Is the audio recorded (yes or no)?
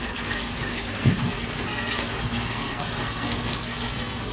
no